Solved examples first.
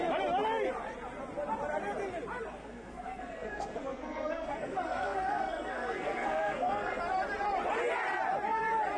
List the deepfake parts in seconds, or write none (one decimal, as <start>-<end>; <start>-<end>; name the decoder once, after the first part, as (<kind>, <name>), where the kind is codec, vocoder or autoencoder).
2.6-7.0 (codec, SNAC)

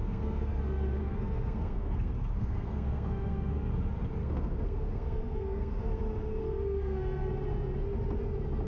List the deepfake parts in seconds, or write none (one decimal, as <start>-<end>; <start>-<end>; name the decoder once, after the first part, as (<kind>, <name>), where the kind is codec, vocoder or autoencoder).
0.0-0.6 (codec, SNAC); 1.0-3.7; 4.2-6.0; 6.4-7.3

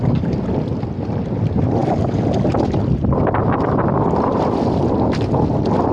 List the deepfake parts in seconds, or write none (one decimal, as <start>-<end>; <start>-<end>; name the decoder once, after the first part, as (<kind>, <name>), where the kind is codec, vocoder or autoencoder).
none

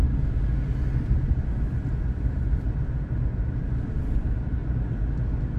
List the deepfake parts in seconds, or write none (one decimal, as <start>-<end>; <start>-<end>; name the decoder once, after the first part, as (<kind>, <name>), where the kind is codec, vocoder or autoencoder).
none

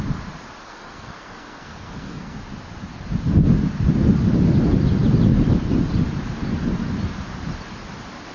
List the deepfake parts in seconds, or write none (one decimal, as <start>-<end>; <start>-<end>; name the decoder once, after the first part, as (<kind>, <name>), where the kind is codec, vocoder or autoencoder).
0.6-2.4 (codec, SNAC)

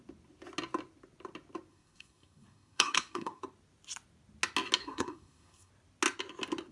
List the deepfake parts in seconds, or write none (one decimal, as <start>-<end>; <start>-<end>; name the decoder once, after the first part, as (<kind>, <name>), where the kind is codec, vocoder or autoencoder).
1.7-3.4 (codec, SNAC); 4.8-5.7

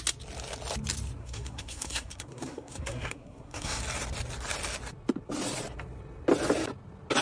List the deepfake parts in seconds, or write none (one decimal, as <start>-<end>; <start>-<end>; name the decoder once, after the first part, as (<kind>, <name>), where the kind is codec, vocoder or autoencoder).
1.2-3.8 (codec, SNAC)

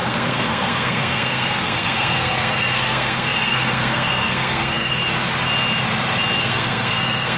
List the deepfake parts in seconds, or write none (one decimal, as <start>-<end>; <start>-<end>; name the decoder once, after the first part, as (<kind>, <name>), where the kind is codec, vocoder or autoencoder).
0.0-5.0 (codec, SNAC); 6.4-7.4